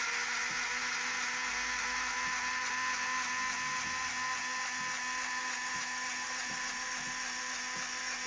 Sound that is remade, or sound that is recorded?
recorded